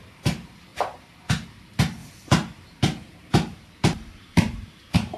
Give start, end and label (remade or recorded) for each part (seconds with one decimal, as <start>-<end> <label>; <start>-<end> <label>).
0.0-2.0 recorded; 2.0-5.2 remade